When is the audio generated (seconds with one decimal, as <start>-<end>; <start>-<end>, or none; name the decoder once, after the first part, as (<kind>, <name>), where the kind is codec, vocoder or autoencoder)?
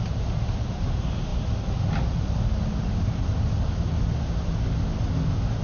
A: none